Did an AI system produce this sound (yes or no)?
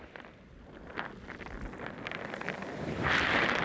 no